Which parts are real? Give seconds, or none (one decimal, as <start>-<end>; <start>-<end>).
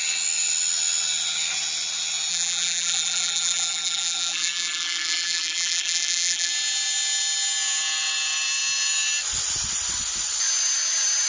0.0-2.3; 6.5-11.3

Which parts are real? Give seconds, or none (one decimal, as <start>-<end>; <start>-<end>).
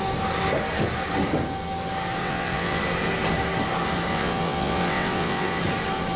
0.0-2.2; 2.8-4.1; 5.6-6.2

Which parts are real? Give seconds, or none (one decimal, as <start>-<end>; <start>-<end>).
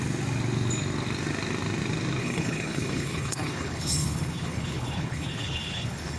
0.0-2.2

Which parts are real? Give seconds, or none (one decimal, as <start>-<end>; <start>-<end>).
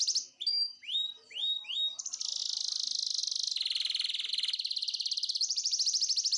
0.0-6.4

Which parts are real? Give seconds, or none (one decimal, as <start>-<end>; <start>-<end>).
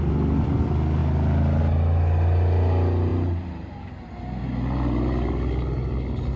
0.0-6.4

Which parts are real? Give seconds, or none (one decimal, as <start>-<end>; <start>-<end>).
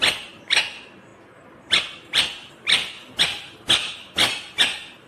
0.0-5.1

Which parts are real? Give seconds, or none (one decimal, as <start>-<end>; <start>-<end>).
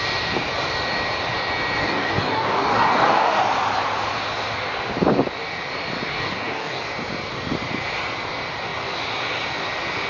0.0-1.8; 3.4-6.1; 6.8-10.1